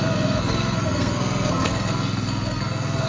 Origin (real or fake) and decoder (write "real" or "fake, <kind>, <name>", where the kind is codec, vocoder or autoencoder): fake, codec, SNAC